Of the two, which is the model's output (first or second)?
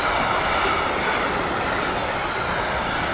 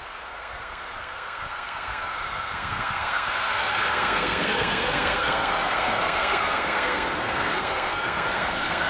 second